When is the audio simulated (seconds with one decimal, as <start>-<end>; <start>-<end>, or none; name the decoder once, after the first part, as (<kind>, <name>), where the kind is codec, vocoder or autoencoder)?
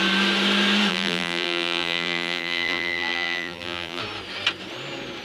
0.9-4.0 (vocoder, BigVGAN v2)